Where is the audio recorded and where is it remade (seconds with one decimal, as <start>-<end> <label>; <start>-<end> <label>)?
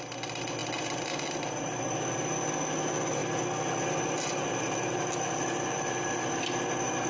0.0-7.1 recorded